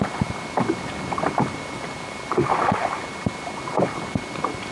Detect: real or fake real